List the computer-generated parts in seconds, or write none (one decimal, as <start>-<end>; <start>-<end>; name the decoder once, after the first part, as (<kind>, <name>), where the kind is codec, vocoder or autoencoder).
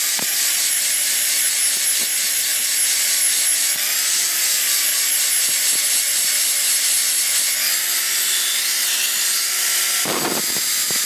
none